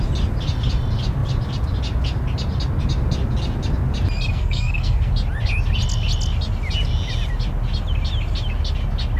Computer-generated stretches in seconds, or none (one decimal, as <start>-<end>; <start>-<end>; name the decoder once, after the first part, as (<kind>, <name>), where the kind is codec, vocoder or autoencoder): 4.3-5.1 (codec, SNAC)